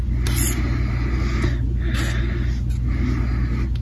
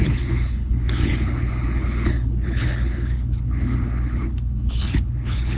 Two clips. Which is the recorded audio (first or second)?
first